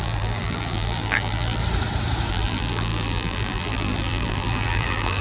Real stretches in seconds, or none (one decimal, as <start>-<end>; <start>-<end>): 1.6-2.3